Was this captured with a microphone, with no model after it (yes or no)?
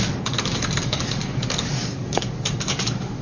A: no